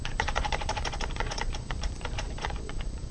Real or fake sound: fake